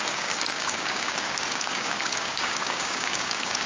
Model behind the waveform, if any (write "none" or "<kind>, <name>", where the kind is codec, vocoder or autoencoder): codec, DAC